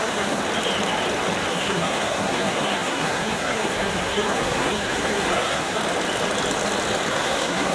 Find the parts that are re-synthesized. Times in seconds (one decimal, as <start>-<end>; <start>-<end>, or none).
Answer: 0.0-0.4; 1.5-5.8; 7.1-7.7